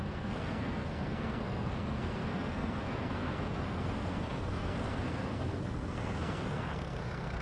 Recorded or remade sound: remade